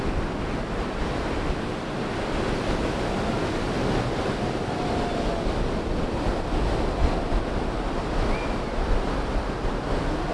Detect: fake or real real